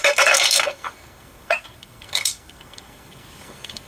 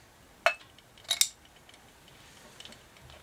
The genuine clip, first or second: second